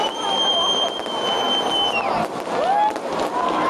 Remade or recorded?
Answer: recorded